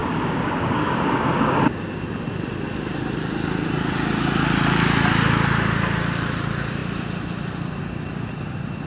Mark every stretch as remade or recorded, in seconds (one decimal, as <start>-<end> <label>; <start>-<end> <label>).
0.0-2.0 remade; 2.0-8.9 recorded